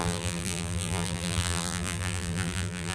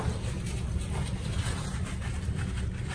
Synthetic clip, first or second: first